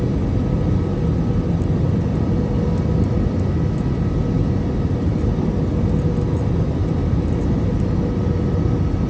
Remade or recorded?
recorded